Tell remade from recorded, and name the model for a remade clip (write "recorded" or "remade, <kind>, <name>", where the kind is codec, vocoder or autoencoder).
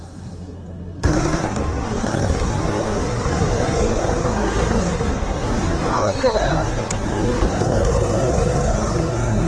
remade, codec, SNAC